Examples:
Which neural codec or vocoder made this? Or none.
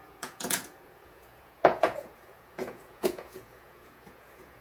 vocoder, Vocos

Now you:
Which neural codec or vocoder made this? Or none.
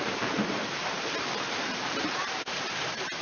vocoder, BigVGAN v2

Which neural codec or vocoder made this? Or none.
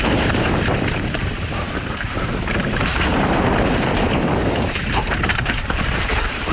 vocoder, BigVGAN v2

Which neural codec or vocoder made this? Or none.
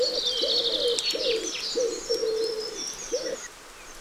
none